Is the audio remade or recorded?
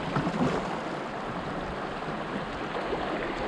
recorded